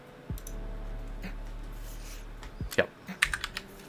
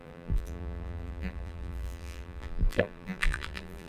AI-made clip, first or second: second